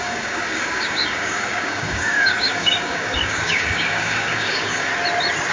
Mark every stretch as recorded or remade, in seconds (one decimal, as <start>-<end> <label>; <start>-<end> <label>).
0.0-4.9 remade; 4.9-5.5 recorded